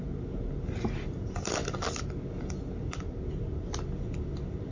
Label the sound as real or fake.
real